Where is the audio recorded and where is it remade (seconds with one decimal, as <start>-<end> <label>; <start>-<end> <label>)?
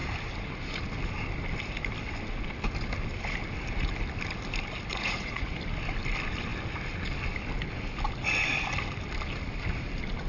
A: 0.0-4.9 recorded; 4.9-5.5 remade; 5.5-10.3 recorded